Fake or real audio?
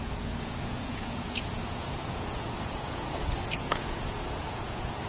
fake